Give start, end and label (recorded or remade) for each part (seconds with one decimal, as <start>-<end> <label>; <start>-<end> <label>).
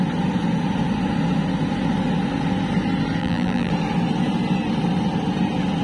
0.0-3.2 recorded; 3.2-3.7 remade; 3.7-5.8 recorded